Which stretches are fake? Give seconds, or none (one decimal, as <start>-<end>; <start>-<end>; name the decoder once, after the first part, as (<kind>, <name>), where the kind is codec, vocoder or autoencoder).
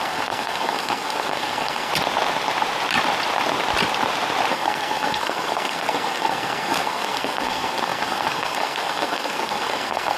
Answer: 0.0-1.9 (codec, SNAC); 4.5-10.2